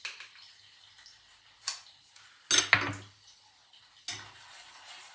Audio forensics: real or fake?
real